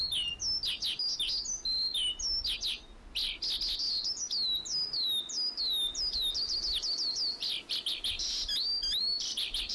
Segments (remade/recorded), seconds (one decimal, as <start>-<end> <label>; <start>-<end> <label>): 0.0-9.0 recorded; 9.0-9.7 remade